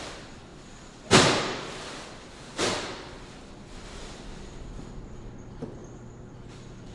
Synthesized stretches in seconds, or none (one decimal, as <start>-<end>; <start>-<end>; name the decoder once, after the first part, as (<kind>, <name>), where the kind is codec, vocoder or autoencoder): 0.0-6.9 (vocoder, BigVGAN v2)